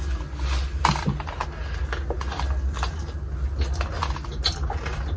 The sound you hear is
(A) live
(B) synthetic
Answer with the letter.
A